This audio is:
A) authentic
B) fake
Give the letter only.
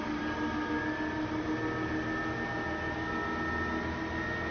A